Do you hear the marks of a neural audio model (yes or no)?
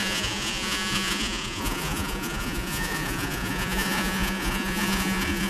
yes